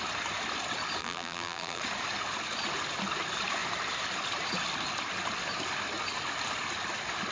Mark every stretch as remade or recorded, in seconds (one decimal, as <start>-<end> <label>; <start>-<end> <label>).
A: 0.0-1.0 recorded; 1.0-1.8 remade; 1.8-7.3 recorded